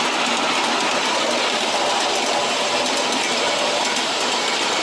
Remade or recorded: recorded